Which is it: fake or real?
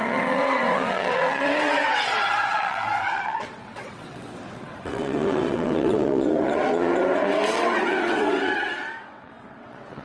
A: fake